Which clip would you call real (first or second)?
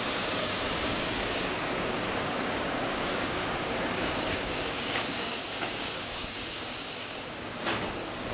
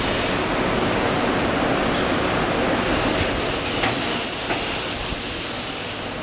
second